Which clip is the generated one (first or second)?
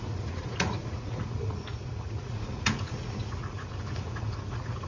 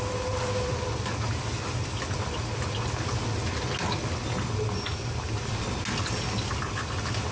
first